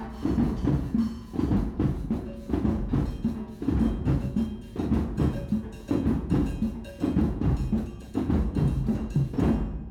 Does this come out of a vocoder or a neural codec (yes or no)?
yes